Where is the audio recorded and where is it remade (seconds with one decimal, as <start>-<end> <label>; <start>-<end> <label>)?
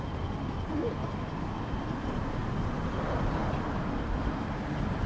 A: 0.0-5.1 recorded